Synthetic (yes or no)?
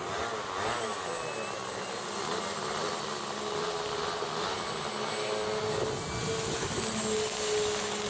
no